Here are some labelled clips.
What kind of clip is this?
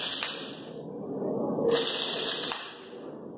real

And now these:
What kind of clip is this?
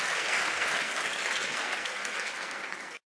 fake